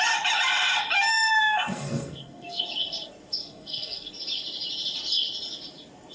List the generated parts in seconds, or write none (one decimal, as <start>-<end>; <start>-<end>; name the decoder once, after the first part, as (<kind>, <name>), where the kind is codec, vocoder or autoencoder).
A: 1.1-2.6 (codec, SNAC); 3.4-4.1